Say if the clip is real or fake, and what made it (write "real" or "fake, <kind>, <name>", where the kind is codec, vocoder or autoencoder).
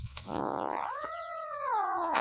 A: fake, vocoder, Vocos